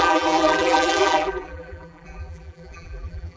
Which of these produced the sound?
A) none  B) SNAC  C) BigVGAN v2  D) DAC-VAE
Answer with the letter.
C